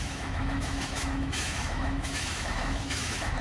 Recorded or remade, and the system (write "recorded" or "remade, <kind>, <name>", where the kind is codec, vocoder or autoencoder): remade, autoencoder, DAC-VAE